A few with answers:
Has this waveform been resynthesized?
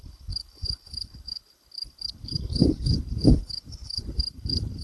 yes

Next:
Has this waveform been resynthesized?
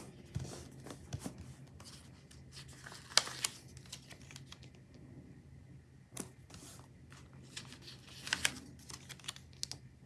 no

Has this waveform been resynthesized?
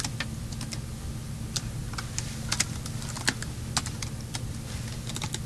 no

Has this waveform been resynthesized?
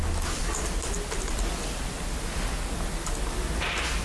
no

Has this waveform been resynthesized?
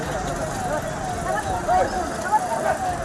no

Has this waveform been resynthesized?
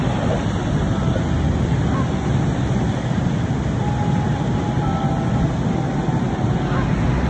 no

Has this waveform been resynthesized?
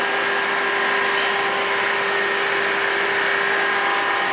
no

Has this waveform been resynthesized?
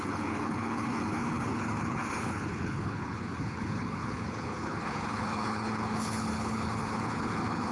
yes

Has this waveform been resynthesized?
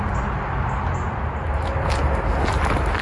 no